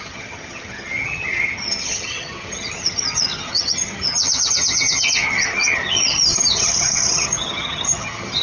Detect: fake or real fake